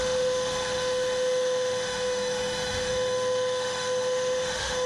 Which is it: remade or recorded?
remade